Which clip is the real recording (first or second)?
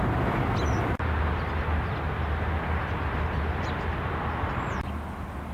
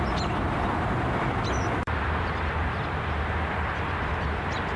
first